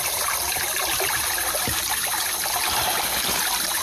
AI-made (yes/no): no